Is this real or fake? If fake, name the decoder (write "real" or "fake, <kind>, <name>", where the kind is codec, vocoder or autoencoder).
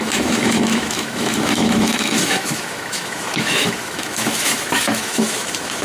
fake, autoencoder, DAC-VAE